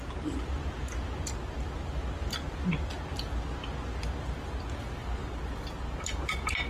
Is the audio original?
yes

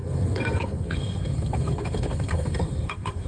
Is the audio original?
no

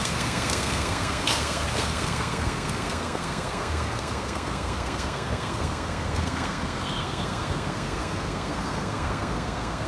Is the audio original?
no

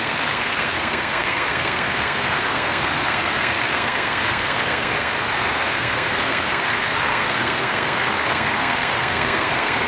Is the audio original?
no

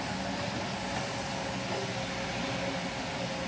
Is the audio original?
yes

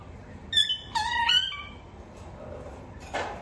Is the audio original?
yes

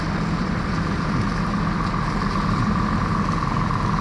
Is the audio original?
yes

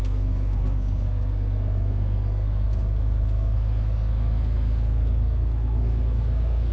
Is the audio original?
no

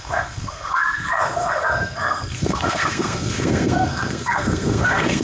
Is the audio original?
no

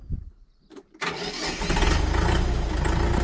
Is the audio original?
yes